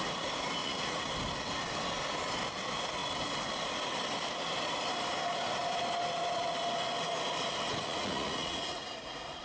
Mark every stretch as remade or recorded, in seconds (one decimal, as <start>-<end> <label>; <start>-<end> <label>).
0.0-0.6 recorded; 0.6-1.1 remade; 1.1-7.8 recorded; 7.8-9.4 remade